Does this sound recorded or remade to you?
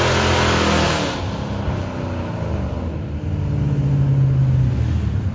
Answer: recorded